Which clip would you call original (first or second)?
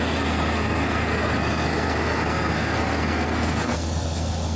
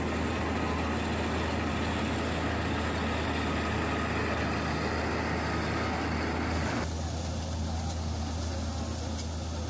second